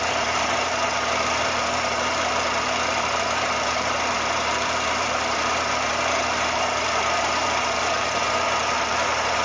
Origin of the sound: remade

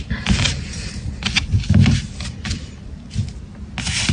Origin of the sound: recorded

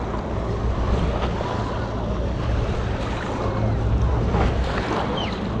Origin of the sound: recorded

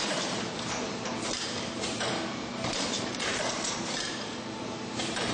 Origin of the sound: remade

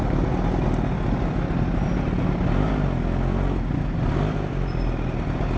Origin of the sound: recorded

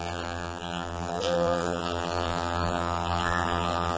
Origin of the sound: remade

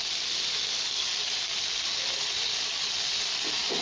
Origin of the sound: recorded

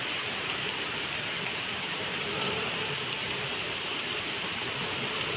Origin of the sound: remade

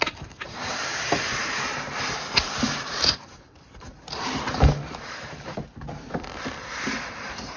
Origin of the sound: remade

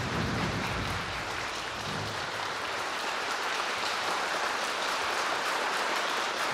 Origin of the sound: remade